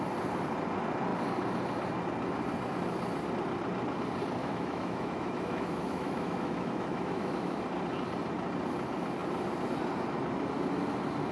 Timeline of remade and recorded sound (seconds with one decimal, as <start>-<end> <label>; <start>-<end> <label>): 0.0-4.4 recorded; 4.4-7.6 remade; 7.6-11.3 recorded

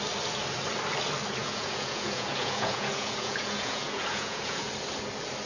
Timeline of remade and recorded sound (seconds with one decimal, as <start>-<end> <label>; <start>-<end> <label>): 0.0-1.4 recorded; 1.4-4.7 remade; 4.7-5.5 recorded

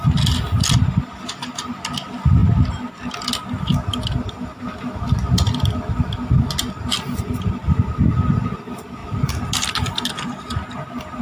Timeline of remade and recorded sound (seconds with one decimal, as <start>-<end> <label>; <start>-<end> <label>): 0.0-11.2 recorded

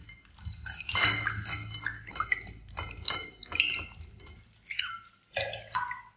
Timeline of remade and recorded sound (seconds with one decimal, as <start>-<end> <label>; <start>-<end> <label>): 0.0-6.2 recorded

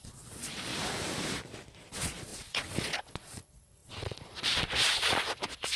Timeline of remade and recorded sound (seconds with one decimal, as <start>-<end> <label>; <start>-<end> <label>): 0.0-0.7 remade; 0.7-1.9 recorded; 1.9-5.8 remade